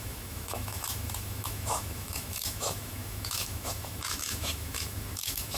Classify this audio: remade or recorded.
remade